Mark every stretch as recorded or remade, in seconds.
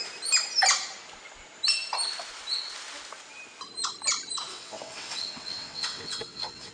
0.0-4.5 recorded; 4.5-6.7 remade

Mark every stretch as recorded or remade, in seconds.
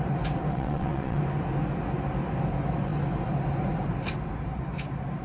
0.0-0.5 recorded; 0.5-1.2 remade; 1.2-5.2 recorded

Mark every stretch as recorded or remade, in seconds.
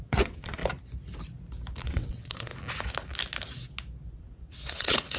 0.0-0.6 remade; 0.6-1.8 recorded; 1.8-2.5 remade; 2.5-4.1 recorded; 4.1-5.2 remade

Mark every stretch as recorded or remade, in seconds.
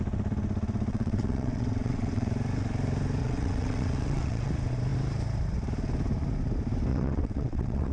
0.0-0.9 recorded; 0.9-2.3 remade; 2.3-3.2 recorded; 3.2-4.5 remade; 4.5-6.9 recorded; 6.9-7.9 remade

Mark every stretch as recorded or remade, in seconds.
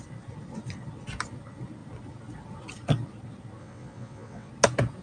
0.0-3.6 recorded; 3.6-4.5 remade; 4.5-5.0 recorded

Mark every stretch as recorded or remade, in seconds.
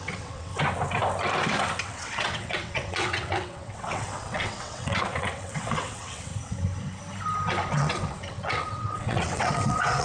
0.0-0.5 remade; 0.5-1.8 recorded; 1.8-6.3 remade; 6.3-7.7 recorded; 7.7-10.0 remade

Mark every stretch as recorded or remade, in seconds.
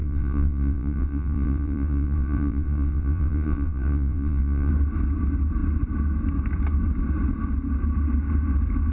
0.0-4.7 remade; 4.7-8.9 recorded